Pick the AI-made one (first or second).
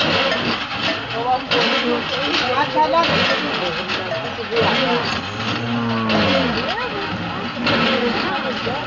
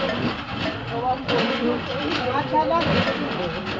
second